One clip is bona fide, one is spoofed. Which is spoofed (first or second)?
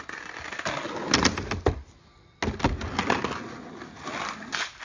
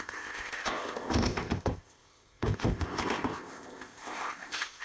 second